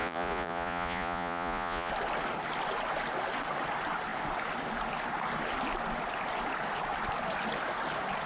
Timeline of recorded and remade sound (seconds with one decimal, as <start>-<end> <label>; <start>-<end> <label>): 0.0-1.9 remade; 1.9-8.3 recorded